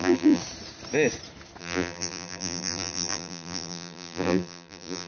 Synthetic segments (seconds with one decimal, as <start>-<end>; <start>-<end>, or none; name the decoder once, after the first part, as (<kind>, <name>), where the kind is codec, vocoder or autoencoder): 0.0-0.4 (vocoder, BigVGAN v2); 1.6-5.1